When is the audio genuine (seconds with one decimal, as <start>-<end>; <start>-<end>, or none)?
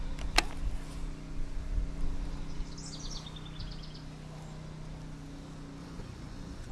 0.0-5.8